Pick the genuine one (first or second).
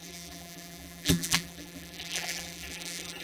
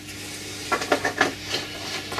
second